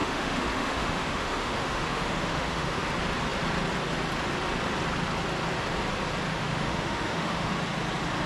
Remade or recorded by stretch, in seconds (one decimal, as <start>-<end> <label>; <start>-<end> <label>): 0.0-2.8 remade; 2.8-6.3 recorded; 6.3-7.5 remade; 7.5-8.3 recorded